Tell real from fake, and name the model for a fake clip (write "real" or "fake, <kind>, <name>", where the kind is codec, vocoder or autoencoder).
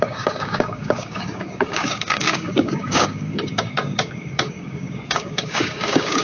fake, codec, DAC